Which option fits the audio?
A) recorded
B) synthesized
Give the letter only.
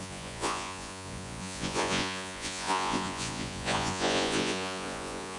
B